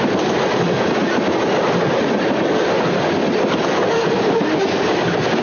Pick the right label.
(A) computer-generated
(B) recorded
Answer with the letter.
B